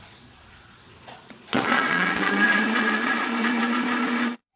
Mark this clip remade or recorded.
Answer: remade